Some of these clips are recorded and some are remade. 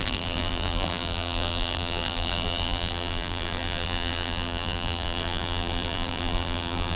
remade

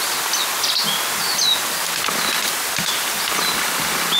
recorded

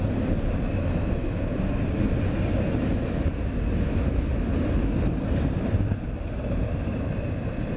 recorded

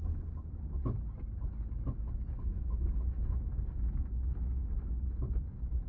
recorded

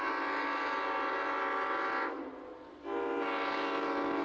recorded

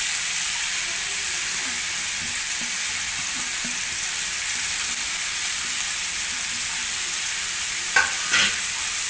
remade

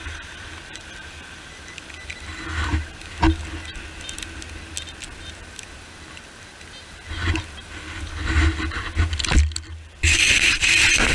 recorded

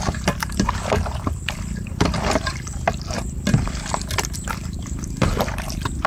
recorded